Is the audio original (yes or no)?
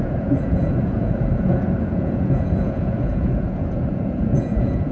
no